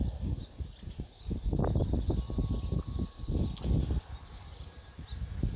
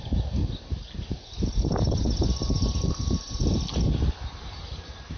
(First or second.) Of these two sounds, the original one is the first